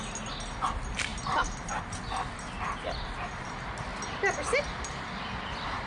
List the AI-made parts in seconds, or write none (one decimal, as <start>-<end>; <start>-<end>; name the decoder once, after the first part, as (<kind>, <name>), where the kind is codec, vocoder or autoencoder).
none

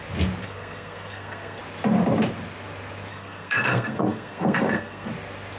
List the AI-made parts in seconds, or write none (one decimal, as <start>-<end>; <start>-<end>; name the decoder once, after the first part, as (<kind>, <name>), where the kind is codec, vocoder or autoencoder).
0.4-1.6 (codec, SNAC); 3.1-5.1

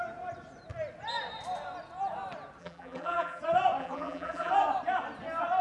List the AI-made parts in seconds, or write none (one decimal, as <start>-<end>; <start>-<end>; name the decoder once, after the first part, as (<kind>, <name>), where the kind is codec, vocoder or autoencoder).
2.6-3.4 (vocoder, BigVGAN v2); 3.8-4.5

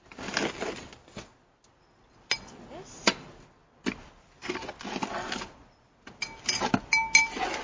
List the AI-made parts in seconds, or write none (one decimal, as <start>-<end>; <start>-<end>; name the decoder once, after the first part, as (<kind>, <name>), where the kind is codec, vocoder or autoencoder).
none